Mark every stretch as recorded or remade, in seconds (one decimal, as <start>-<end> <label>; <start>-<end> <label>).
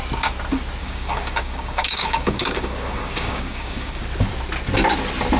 0.0-0.8 recorded; 0.8-4.0 remade; 4.0-5.4 recorded